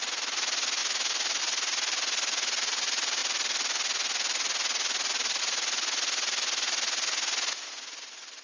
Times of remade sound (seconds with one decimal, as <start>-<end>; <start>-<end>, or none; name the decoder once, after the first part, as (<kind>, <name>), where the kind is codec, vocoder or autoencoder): 0.8-1.4 (autoencoder, DAC-VAE)